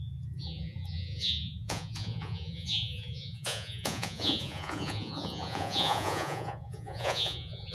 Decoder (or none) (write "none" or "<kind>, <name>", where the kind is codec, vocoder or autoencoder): vocoder, Vocos